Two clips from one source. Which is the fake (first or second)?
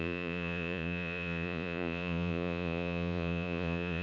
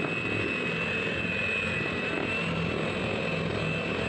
first